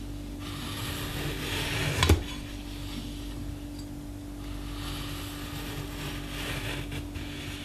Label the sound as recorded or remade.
recorded